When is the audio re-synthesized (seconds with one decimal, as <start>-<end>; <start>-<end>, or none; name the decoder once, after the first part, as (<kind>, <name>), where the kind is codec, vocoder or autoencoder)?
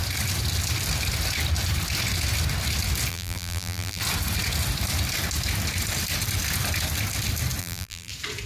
3.1-4.0 (vocoder, BigVGAN v2); 7.6-8.1